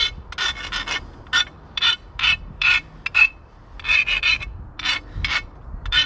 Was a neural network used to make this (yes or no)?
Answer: no